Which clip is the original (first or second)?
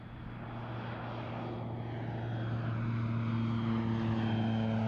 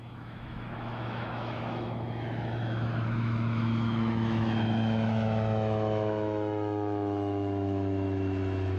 first